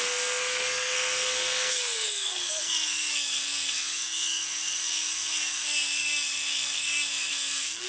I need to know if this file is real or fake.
fake